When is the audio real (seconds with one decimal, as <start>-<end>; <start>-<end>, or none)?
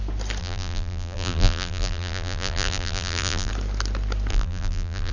0.0-0.4; 3.5-4.3